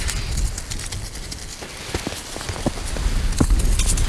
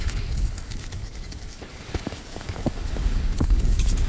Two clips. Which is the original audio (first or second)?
first